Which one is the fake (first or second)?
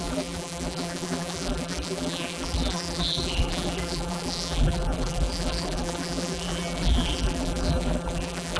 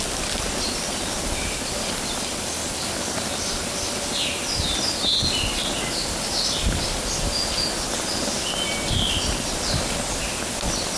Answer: first